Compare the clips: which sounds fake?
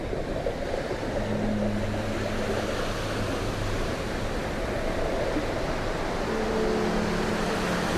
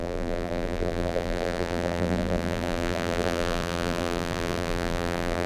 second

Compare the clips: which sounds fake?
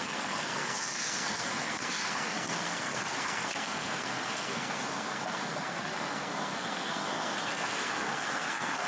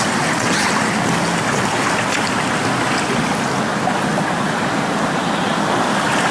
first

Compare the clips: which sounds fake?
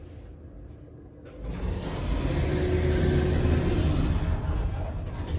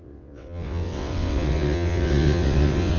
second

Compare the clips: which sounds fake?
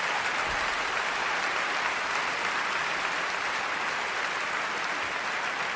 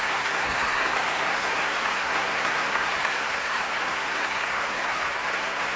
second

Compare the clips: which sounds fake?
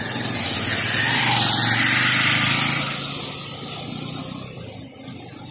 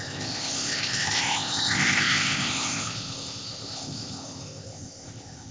second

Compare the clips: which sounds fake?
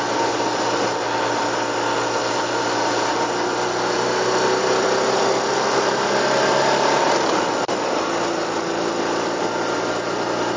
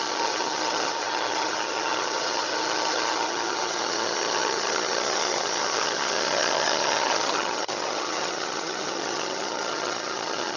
second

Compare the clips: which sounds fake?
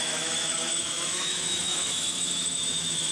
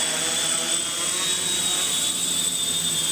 first